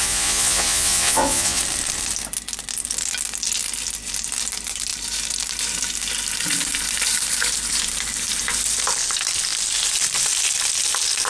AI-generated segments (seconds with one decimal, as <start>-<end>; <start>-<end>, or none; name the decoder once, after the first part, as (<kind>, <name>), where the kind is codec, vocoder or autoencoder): 0.0-1.6 (vocoder, Vocos)